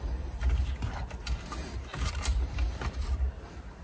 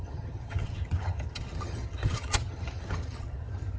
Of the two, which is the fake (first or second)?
second